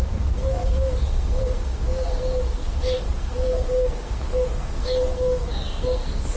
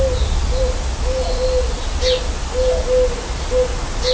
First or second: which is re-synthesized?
first